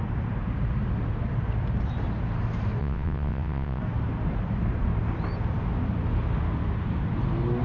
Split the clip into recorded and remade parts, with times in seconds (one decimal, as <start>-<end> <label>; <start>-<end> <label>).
0.0-2.8 recorded; 2.8-3.8 remade; 3.8-7.6 recorded

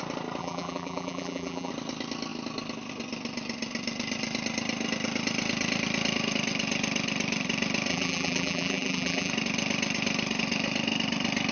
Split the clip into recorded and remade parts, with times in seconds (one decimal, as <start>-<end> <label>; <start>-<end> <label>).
0.0-0.4 recorded; 0.4-1.7 remade; 1.7-7.9 recorded; 7.9-9.3 remade; 9.3-11.5 recorded